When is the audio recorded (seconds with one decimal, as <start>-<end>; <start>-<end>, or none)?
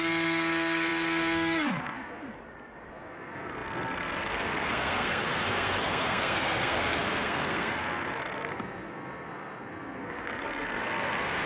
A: 2.2-2.9